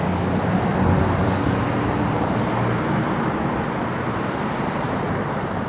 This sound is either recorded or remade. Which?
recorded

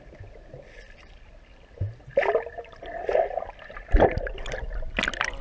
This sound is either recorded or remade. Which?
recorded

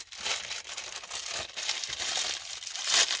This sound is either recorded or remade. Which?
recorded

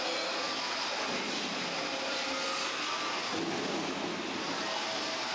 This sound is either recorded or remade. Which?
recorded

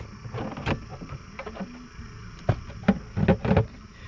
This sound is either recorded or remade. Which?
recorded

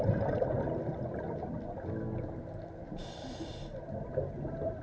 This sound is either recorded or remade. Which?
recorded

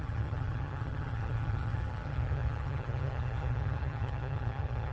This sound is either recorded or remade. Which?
remade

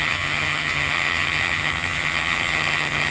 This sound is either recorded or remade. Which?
remade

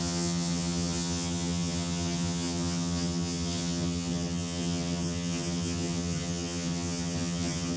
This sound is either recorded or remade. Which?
remade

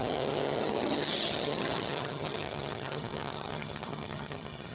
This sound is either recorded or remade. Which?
remade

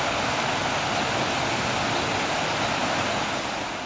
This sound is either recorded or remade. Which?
recorded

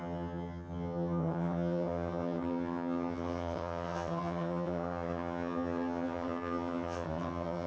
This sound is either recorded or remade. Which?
remade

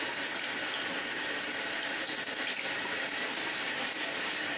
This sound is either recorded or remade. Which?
recorded